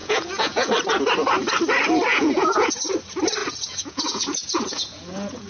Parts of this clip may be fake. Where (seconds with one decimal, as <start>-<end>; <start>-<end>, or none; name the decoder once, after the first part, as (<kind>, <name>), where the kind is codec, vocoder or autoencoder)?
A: 0.0-0.7 (vocoder, Vocos); 2.1-2.8; 3.4-5.5